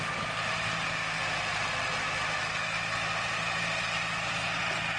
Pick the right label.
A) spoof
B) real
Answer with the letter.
B